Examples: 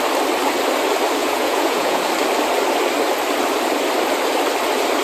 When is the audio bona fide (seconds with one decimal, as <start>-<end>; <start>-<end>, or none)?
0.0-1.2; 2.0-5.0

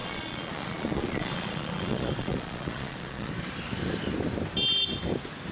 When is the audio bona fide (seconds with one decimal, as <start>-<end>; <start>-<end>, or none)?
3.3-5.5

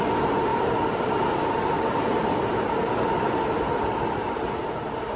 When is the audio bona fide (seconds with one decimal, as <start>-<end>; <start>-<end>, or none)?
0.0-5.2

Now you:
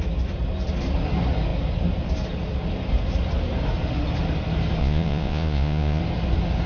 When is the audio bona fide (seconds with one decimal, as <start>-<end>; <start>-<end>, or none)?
0.0-4.8; 6.0-6.7